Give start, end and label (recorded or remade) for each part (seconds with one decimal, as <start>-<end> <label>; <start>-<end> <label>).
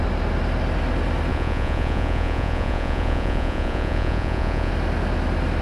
0.0-1.3 recorded; 1.3-4.7 remade; 4.7-5.6 recorded